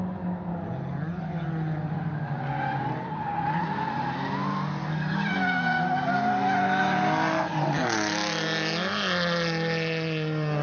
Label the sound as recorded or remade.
recorded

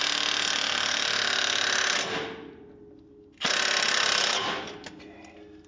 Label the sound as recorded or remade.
recorded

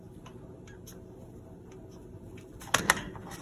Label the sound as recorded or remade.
recorded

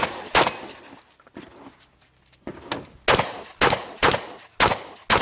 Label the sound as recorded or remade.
recorded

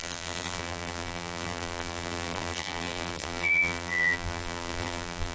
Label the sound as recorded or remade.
remade